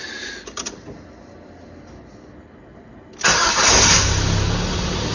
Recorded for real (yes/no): yes